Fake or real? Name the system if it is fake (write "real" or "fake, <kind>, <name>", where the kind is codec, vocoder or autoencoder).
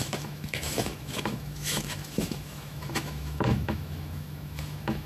fake, autoencoder, DAC-VAE